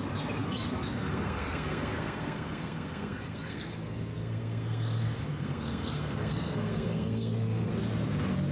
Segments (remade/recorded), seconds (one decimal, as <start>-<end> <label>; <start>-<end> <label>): 0.0-7.7 remade; 7.7-8.5 recorded